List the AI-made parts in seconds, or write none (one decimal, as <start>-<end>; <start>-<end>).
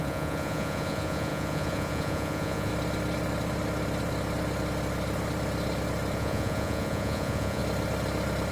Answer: 0.0-2.7; 6.2-7.6